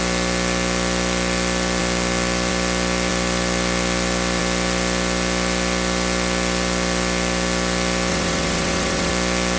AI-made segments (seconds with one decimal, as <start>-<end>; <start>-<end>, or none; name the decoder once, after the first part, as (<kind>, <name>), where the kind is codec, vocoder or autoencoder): 8.1-9.1 (vocoder, WaveNeXt)